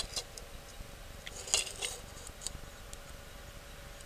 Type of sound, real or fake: real